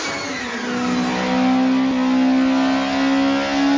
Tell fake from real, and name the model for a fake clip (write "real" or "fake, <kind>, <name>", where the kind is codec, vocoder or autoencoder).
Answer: real